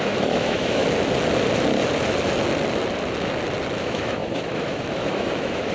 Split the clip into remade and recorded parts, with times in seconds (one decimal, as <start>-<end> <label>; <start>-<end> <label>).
0.0-0.8 remade; 0.8-3.8 recorded; 3.8-5.7 remade